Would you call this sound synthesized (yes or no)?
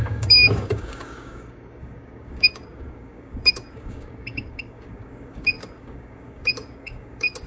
yes